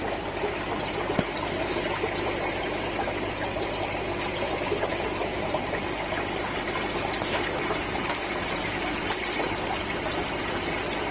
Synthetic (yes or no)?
no